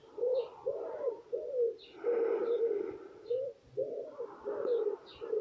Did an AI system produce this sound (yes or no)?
no